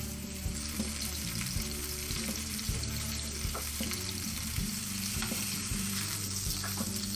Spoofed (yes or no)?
yes